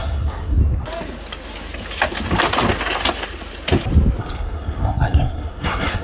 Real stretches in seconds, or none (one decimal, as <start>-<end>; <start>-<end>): 0.6-4.2